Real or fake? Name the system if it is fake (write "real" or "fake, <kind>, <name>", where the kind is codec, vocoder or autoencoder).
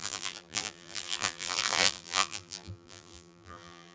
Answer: fake, vocoder, BigVGAN v2